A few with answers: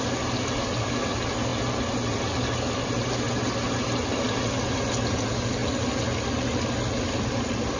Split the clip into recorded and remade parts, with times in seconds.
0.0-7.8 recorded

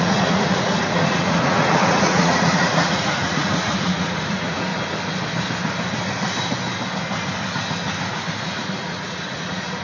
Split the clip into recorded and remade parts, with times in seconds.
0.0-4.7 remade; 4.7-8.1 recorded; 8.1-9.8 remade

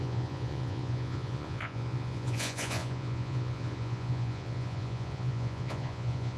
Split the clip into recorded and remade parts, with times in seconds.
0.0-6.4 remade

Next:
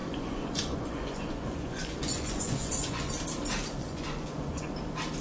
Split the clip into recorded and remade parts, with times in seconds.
0.0-3.1 remade; 3.1-3.8 recorded; 3.8-4.7 remade; 4.7-5.2 recorded